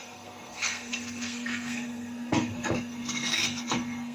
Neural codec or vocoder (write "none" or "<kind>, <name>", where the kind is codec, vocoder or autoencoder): codec, SNAC